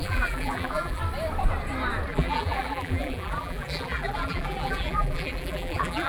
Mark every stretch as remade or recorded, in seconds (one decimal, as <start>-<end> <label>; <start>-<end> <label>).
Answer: 0.0-1.0 remade; 1.0-2.1 recorded; 2.1-6.1 remade